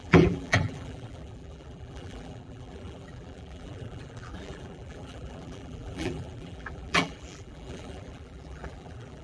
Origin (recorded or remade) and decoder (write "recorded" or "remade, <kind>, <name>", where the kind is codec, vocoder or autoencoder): remade, vocoder, BigVGAN v2